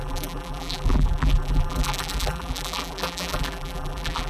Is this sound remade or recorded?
remade